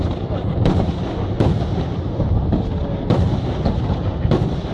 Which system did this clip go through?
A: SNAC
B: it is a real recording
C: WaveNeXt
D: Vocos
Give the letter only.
B